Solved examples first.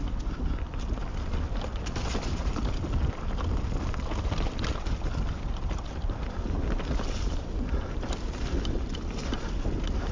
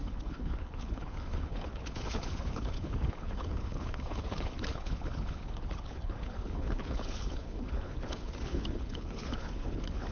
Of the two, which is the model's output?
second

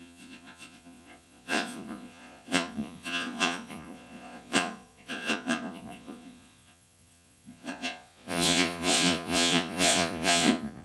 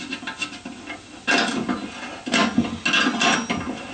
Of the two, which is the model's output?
first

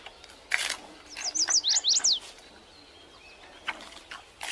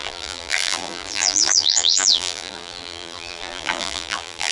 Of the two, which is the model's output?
second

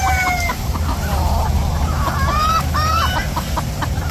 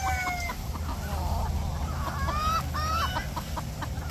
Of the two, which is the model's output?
first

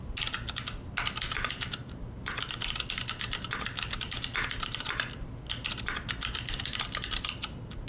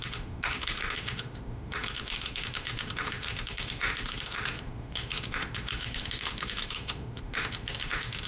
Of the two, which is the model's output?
second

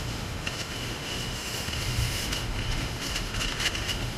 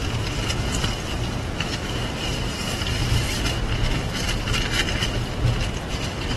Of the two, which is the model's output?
first